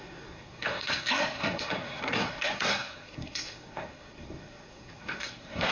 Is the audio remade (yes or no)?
yes